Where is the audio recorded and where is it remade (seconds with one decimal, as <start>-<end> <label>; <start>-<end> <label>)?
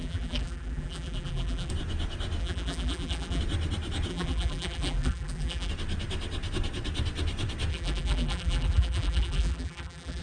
0.0-1.7 remade; 1.7-2.4 recorded; 2.4-3.4 remade; 3.4-4.1 recorded; 4.1-5.7 remade; 5.7-7.7 recorded; 7.7-10.2 remade